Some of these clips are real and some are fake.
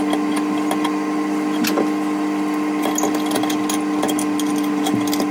real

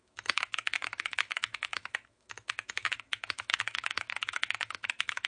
fake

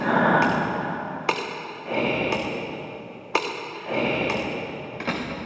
real